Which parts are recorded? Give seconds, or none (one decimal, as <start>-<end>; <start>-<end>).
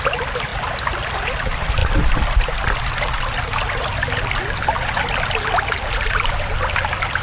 0.0-7.2